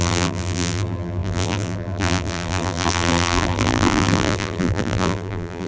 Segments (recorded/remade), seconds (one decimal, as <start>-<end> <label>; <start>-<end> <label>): 0.0-5.7 remade